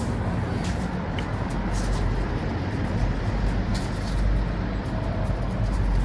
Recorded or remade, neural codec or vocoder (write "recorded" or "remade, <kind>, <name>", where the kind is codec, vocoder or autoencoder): recorded